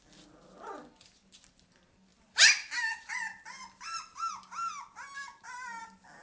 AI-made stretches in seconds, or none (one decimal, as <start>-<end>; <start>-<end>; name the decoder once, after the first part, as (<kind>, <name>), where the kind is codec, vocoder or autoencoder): none